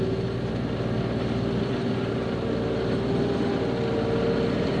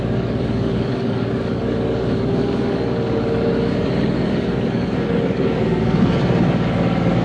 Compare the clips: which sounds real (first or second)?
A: first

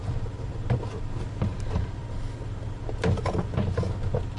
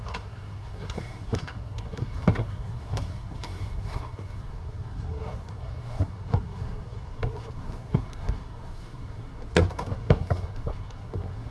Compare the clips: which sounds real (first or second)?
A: first